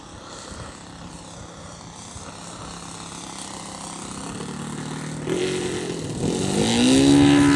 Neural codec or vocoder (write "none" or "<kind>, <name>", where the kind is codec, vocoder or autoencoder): none